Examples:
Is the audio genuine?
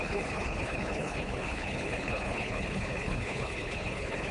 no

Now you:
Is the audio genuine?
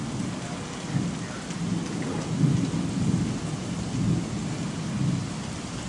yes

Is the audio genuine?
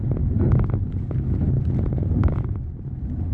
yes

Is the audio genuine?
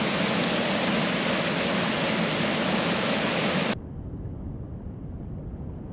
yes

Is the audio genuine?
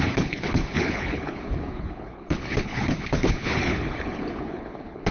no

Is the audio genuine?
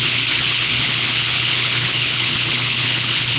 no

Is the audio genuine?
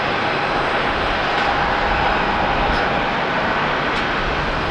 yes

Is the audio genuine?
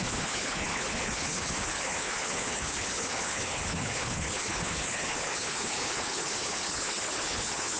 no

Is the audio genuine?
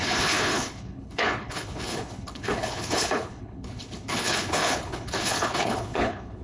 no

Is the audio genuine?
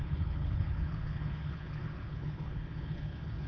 no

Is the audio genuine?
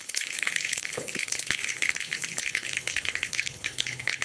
no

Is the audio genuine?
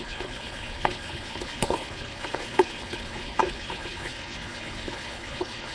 no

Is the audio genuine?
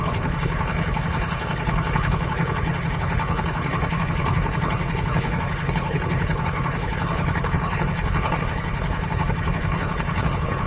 no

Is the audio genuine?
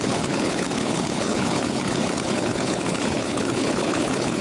no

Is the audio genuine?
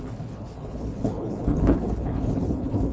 no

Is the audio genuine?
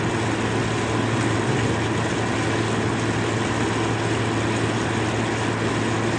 yes